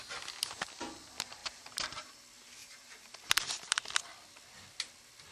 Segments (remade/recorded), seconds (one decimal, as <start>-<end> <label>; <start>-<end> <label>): 0.0-1.4 recorded; 1.4-2.2 remade; 2.2-2.6 recorded; 2.6-3.8 remade; 3.8-5.3 recorded